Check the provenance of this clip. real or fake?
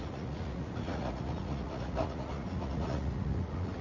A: fake